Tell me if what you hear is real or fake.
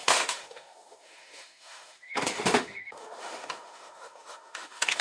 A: fake